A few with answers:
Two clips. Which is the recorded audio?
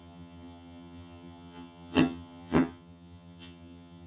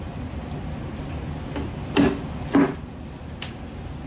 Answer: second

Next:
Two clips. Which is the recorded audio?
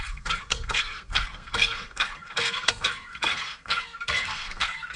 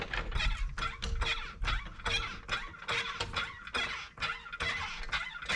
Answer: second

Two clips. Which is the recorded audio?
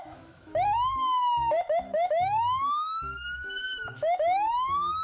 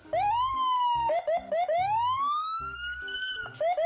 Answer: second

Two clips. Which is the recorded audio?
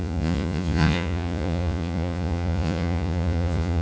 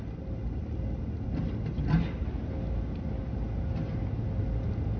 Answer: second